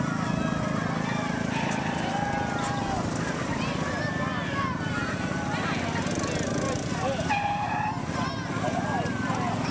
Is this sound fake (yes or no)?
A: no